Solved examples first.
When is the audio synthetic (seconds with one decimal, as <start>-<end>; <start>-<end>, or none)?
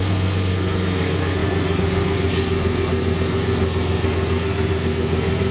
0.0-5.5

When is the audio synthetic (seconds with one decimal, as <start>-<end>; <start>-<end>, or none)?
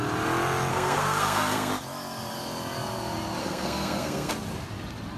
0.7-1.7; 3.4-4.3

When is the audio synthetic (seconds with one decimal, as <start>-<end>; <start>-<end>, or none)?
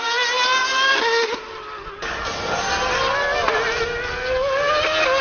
none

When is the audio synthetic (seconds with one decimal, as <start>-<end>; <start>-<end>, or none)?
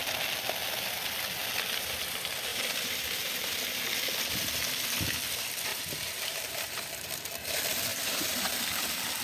2.5-3.5; 5.7-7.1; 7.9-8.5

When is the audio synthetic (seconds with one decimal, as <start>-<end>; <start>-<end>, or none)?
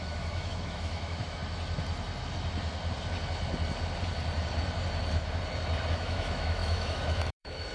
0.0-1.4; 5.9-7.7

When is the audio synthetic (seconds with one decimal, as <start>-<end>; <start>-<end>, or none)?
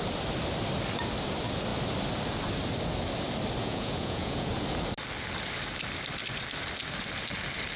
3.6-4.5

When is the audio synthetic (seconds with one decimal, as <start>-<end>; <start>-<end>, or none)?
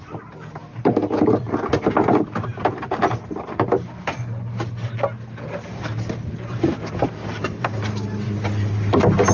none